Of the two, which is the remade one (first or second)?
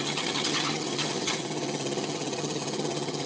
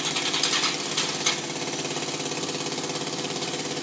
first